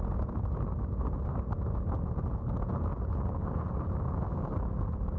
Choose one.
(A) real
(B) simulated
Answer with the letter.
A